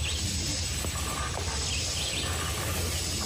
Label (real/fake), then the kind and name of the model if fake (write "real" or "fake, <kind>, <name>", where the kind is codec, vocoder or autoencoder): real